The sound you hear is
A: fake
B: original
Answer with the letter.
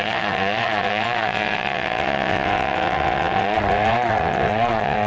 A